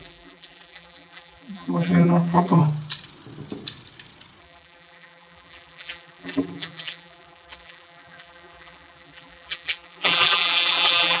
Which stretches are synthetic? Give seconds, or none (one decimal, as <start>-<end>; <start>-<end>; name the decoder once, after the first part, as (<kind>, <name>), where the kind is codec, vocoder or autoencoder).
0.0-2.6 (vocoder, BigVGAN v2); 4.4-11.2